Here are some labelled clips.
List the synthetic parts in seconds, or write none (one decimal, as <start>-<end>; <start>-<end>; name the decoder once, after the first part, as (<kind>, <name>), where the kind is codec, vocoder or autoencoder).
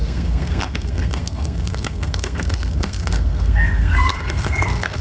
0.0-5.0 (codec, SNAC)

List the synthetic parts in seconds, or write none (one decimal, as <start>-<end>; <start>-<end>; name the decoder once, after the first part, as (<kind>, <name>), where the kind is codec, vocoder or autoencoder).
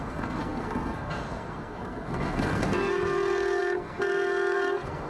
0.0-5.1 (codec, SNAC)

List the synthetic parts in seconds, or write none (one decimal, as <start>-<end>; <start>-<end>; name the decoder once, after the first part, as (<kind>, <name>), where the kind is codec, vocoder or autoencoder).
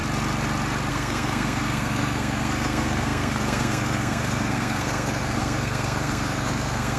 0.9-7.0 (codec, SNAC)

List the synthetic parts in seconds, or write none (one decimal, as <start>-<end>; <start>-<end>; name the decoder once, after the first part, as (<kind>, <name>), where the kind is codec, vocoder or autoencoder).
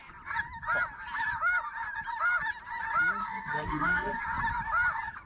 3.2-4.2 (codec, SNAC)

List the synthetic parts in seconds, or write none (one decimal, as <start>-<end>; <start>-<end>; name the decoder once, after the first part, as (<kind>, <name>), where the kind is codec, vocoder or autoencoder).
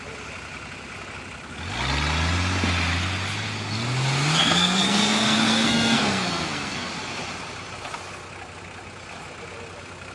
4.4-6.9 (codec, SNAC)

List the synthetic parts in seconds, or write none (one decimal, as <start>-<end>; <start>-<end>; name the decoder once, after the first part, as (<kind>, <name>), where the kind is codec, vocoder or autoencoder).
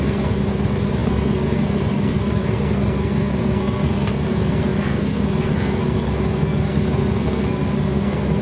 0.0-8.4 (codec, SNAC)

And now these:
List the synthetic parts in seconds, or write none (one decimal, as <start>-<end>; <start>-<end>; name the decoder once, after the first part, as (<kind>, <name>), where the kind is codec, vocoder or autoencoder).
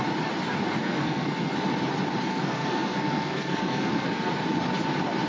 0.8-1.5 (codec, SNAC); 2.3-4.3